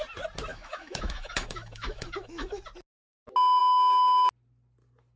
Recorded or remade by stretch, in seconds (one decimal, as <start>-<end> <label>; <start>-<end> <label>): 0.0-0.5 recorded; 0.5-2.6 remade; 2.6-5.2 recorded